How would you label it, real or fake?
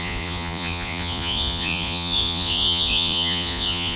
fake